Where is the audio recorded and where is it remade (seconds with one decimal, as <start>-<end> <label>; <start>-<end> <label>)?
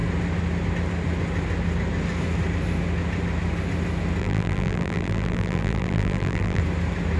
0.0-4.2 recorded; 4.2-6.6 remade; 6.6-7.2 recorded